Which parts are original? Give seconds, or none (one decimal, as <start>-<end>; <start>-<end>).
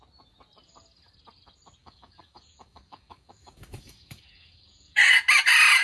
0.0-1.8; 5.0-5.8